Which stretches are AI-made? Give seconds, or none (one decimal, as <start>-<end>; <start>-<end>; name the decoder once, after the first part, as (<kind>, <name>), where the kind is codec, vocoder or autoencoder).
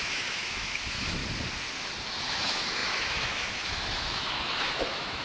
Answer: 0.0-1.2 (autoencoder, DAC-VAE); 2.3-5.2